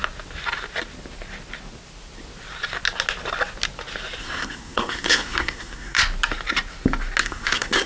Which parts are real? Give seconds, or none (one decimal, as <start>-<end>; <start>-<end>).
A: 0.0-4.2; 6.0-7.2